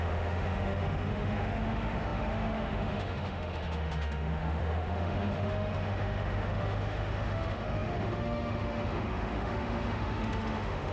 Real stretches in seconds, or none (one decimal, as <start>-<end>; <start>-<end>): none